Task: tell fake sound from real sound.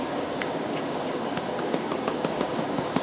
fake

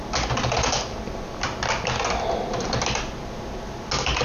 real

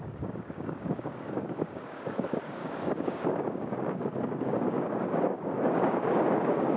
fake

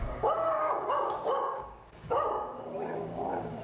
fake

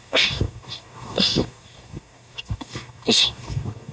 fake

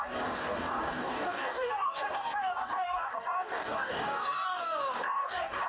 fake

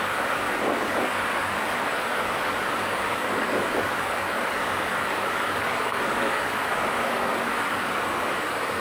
fake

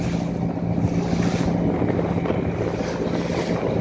real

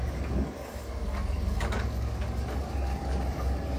fake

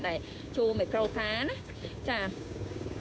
fake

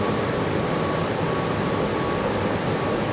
real